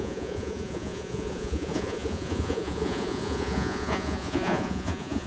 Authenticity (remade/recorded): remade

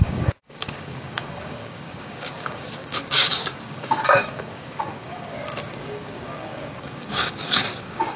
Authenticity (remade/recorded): remade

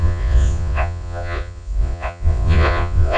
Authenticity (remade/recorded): remade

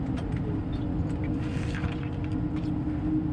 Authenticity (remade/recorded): recorded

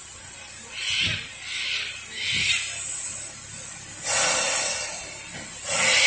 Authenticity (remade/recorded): recorded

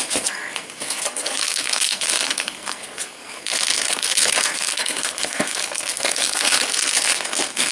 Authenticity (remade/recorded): remade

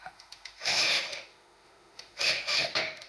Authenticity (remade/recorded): remade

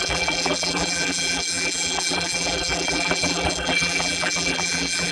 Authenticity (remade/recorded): remade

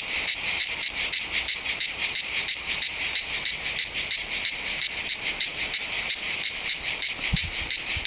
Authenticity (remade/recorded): remade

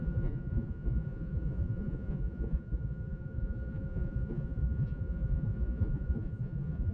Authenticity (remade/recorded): remade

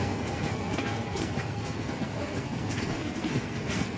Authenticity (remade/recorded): remade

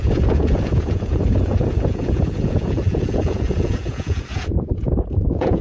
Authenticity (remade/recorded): remade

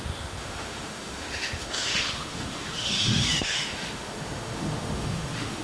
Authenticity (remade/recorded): remade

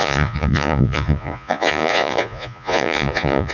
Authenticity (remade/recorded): remade